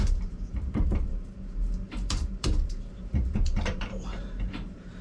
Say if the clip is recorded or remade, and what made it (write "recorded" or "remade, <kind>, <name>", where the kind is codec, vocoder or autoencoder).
remade, vocoder, BigVGAN v2